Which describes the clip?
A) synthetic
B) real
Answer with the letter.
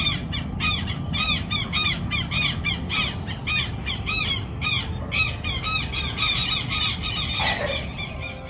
B